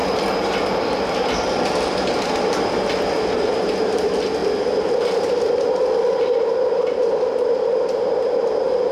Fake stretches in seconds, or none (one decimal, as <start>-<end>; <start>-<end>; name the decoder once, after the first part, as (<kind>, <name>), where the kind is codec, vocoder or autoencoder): none